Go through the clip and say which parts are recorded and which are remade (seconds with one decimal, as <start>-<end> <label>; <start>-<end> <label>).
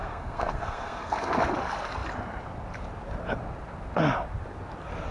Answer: 0.0-1.4 remade; 1.4-5.1 recorded